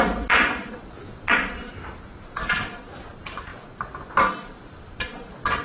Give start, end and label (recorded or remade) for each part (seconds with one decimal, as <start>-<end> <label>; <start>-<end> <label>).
0.0-5.6 recorded

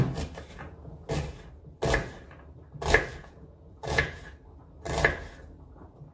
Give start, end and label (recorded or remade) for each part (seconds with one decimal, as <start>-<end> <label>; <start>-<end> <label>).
0.0-0.5 recorded; 0.5-1.1 remade; 1.1-3.2 recorded; 3.2-4.2 remade; 4.2-6.1 recorded

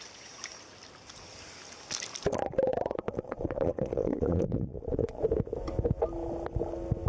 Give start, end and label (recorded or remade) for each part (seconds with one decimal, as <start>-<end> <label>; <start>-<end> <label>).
0.0-2.7 recorded; 2.7-5.2 remade; 5.2-7.1 recorded

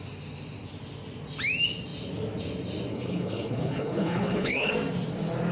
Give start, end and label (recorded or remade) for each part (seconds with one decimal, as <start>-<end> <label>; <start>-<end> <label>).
0.0-2.9 recorded; 2.9-4.7 remade; 4.7-5.5 recorded

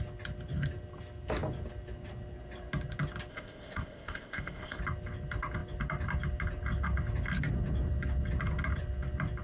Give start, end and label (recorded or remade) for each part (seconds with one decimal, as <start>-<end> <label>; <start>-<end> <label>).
0.0-3.3 recorded; 3.3-4.8 remade; 4.8-9.4 recorded

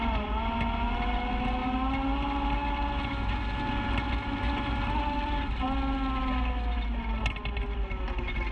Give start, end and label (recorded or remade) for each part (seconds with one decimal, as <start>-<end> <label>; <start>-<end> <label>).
0.0-8.5 recorded

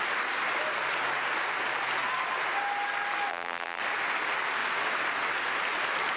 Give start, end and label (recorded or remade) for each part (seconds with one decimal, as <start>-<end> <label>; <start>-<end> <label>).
0.0-3.3 recorded; 3.3-3.8 remade; 3.8-6.2 recorded

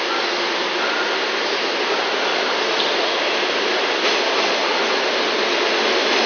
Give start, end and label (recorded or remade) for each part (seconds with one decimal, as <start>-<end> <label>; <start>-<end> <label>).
0.0-6.3 recorded